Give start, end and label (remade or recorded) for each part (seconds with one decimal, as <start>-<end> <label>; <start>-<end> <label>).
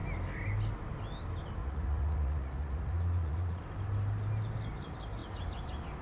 0.0-1.6 recorded; 1.6-3.6 remade; 3.6-6.0 recorded